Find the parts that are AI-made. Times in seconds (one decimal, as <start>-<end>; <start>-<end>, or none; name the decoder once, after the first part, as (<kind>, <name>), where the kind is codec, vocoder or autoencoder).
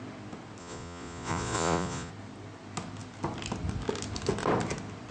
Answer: 0.6-2.1 (vocoder, Vocos)